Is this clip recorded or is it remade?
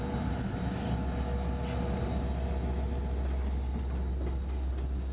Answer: recorded